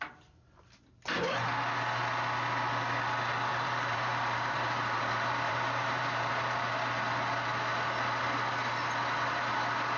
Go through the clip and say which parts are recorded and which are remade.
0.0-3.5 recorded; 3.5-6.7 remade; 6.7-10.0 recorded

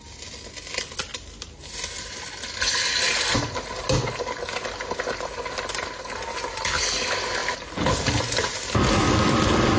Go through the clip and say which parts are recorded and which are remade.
0.0-9.8 recorded

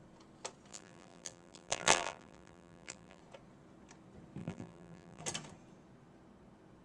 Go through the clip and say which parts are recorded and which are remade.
0.0-0.7 recorded; 0.7-3.2 remade; 3.2-4.4 recorded; 4.4-5.2 remade; 5.2-6.8 recorded

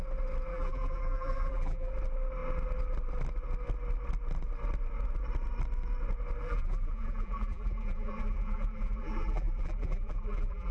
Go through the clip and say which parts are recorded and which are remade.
0.0-0.5 recorded; 0.5-1.9 remade; 1.9-6.4 recorded; 6.4-10.7 remade

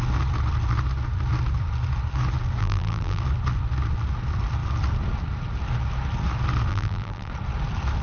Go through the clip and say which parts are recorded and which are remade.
0.0-2.6 recorded; 2.6-3.2 remade; 3.2-6.7 recorded; 6.7-7.3 remade; 7.3-8.0 recorded

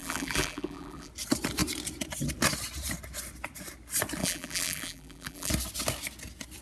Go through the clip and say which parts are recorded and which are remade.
0.0-1.1 remade; 1.1-4.2 recorded; 4.2-5.5 remade; 5.5-6.6 recorded

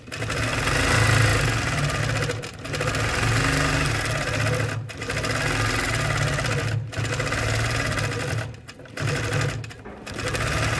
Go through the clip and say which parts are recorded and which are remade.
0.0-1.3 recorded; 1.3-2.0 remade; 2.0-10.8 recorded

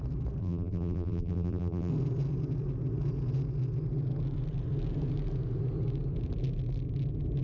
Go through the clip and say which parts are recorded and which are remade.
0.0-0.4 recorded; 0.4-1.9 remade; 1.9-7.4 recorded